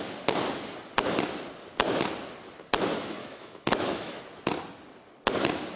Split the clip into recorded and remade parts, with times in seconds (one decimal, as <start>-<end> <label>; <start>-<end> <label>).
0.0-3.2 recorded; 3.2-4.2 remade; 4.2-5.8 recorded